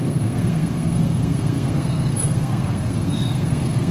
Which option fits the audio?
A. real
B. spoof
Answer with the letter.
B